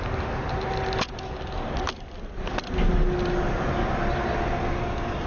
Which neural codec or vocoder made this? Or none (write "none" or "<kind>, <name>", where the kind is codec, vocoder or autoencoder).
none